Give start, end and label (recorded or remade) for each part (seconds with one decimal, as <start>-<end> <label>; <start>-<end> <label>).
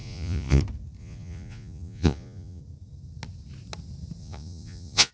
0.0-0.6 remade; 0.6-1.0 recorded; 1.0-2.6 remade; 2.6-4.2 recorded; 4.2-5.1 remade